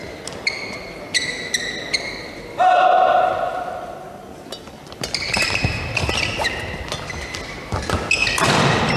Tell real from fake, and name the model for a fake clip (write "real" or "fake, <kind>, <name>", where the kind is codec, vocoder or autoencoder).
real